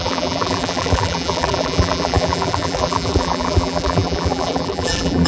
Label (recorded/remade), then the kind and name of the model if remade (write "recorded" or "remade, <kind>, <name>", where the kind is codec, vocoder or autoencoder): remade, vocoder, BigVGAN v2